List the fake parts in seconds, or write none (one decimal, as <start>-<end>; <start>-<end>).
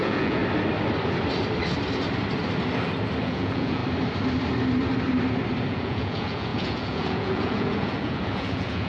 0.0-0.4; 3.2-3.8; 5.7-8.9